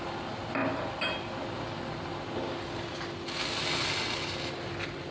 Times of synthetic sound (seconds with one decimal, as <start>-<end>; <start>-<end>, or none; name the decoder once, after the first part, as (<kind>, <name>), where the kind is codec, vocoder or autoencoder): none